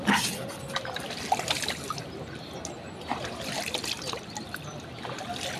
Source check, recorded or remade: recorded